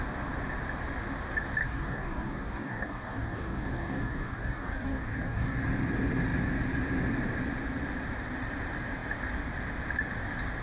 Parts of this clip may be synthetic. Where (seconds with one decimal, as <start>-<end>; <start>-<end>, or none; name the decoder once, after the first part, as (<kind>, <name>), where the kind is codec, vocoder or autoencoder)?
1.6-5.6 (codec, DAC)